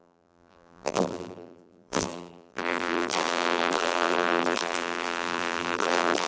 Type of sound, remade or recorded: remade